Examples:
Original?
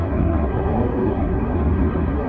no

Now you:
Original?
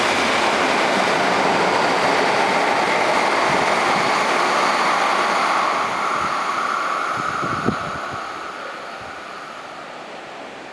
yes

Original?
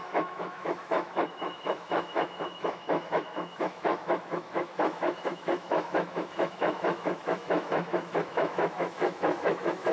no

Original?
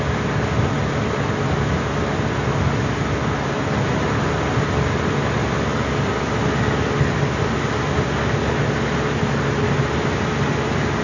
yes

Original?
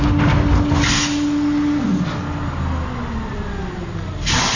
yes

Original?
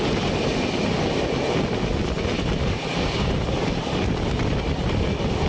yes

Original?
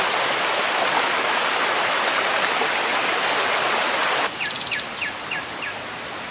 yes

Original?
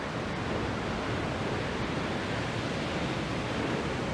yes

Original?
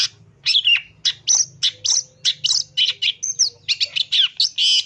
yes